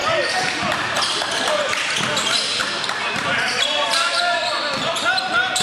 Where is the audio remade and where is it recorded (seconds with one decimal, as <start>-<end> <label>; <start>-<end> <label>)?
0.0-1.7 remade; 1.7-2.6 recorded; 2.6-4.6 remade; 4.6-5.6 recorded